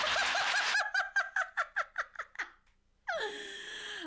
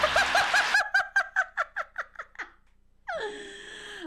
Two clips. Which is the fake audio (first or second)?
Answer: first